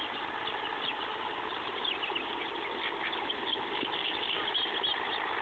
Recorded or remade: recorded